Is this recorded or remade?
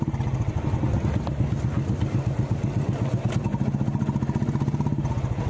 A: recorded